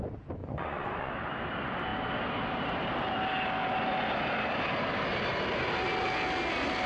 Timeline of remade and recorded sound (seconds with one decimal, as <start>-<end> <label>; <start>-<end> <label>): 0.0-0.4 recorded; 0.4-1.1 remade; 1.1-6.9 recorded